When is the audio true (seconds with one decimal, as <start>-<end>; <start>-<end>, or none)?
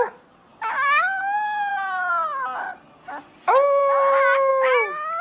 0.0-1.7; 2.6-5.2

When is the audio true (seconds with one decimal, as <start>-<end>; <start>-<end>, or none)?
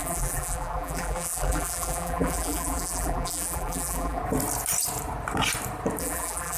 4.2-6.0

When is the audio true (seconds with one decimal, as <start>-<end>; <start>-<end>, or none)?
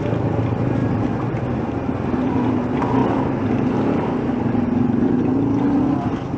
0.0-6.4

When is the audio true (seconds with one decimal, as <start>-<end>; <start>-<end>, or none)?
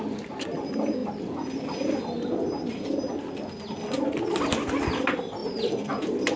0.0-5.4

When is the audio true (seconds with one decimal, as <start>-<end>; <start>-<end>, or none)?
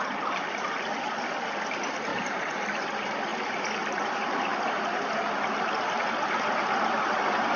0.0-2.1; 2.7-7.6